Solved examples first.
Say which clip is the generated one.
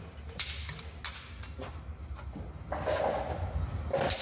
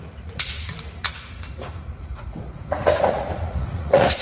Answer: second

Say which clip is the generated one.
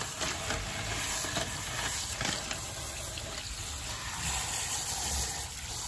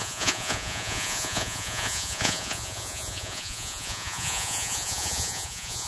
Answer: second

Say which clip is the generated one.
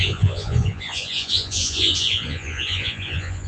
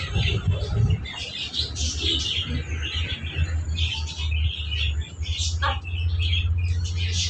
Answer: first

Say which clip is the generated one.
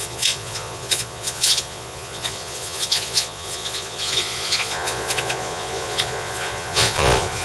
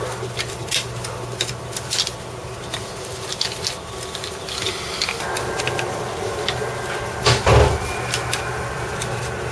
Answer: first